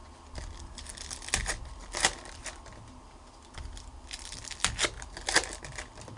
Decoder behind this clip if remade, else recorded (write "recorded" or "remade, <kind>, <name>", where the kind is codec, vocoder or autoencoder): recorded